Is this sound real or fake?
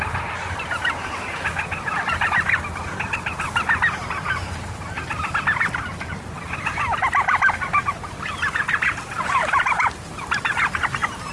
real